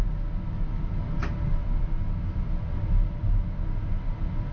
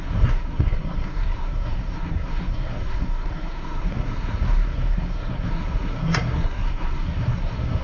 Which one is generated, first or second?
second